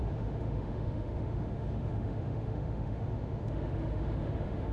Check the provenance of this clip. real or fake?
fake